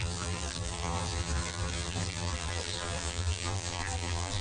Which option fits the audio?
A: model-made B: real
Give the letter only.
A